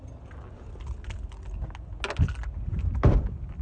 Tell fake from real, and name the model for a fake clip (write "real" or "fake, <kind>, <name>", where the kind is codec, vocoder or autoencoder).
real